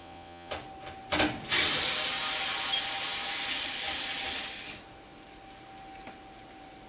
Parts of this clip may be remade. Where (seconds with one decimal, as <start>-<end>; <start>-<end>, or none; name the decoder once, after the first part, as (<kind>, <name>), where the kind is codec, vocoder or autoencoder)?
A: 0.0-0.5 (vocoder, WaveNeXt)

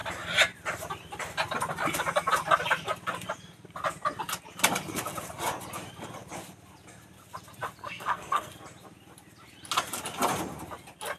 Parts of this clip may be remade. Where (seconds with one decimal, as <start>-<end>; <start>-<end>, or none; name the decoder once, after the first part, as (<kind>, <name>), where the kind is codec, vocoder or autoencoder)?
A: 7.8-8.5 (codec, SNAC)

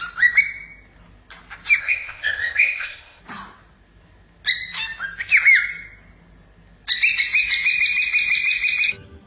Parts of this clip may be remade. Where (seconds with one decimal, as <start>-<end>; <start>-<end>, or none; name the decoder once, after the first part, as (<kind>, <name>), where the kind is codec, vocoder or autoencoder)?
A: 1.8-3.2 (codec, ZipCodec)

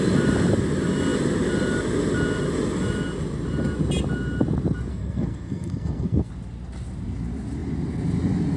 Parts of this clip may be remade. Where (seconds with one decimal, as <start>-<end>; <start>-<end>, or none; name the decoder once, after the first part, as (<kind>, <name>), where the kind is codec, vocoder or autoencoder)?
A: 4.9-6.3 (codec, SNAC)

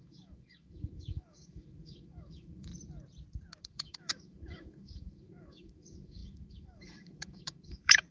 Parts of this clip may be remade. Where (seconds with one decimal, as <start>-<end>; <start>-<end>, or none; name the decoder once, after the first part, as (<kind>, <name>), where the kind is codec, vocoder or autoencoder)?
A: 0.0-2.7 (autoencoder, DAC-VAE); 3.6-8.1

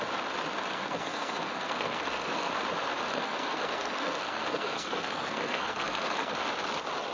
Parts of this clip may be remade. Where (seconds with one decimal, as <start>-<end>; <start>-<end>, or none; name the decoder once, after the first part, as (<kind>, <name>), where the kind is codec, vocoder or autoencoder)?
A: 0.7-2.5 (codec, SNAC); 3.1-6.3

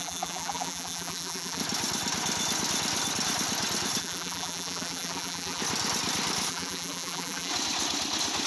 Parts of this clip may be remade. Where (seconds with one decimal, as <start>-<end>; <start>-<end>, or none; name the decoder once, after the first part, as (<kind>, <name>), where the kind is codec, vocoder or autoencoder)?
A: 0.0-1.6 (vocoder, BigVGAN v2); 4.0-5.6; 6.5-7.5